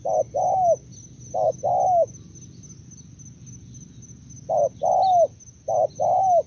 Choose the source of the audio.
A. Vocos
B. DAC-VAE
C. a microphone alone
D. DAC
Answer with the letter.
C